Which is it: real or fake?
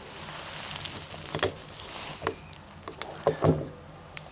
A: real